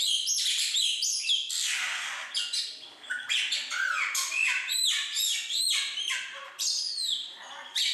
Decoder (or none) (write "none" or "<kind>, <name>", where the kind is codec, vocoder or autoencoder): vocoder, BigVGAN v2